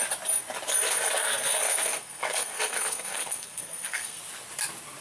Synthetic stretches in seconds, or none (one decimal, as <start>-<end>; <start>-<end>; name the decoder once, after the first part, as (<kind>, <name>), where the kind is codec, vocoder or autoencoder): 1.2-4.2 (codec, SNAC)